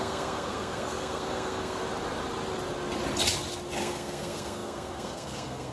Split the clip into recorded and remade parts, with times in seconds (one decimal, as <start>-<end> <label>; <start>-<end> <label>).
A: 0.0-1.8 remade; 1.8-3.8 recorded; 3.8-5.7 remade

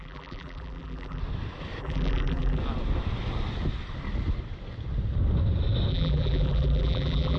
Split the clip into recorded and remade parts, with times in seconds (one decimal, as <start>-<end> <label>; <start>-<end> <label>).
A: 0.0-1.2 remade; 1.2-1.8 recorded; 1.8-2.6 remade; 2.6-5.9 recorded; 5.9-7.4 remade

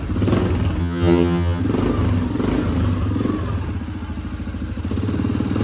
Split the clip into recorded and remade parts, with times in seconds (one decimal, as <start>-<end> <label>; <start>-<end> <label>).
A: 0.0-0.8 recorded; 0.8-1.6 remade; 1.6-5.6 recorded

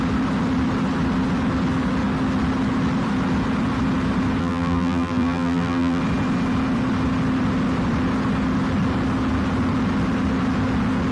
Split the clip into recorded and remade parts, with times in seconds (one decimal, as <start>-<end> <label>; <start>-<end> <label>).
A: 0.0-4.4 recorded; 4.4-6.0 remade; 6.0-11.1 recorded